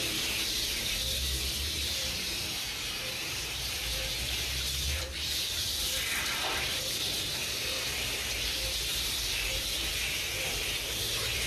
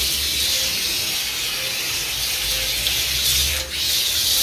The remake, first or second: first